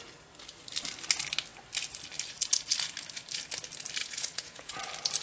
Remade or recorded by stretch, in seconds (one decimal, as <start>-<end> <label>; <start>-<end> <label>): 0.0-4.0 recorded; 4.0-4.8 remade; 4.8-5.2 recorded